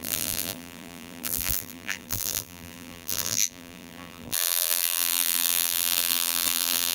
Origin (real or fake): fake